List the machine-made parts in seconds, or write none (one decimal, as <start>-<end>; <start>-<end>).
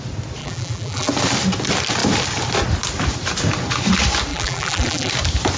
0.4-1.1; 4.3-5.1